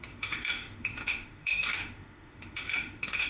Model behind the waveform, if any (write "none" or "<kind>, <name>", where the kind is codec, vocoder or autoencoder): autoencoder, DAC-VAE